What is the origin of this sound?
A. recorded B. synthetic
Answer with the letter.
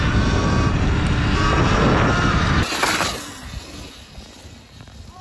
A